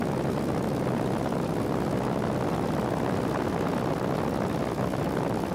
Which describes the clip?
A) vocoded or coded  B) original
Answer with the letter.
B